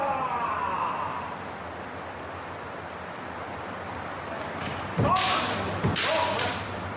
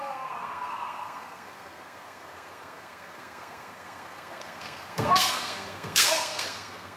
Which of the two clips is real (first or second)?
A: first